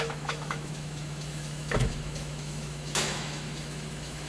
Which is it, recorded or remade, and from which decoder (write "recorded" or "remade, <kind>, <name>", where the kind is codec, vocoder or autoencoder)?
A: remade, autoencoder, DAC-VAE